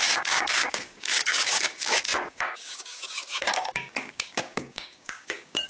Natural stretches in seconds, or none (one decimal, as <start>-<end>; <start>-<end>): none